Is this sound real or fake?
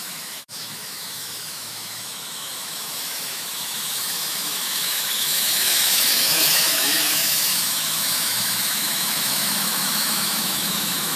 fake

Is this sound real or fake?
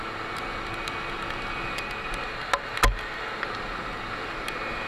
real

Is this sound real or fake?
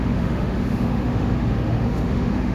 fake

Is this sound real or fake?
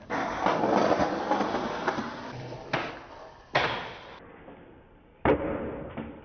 real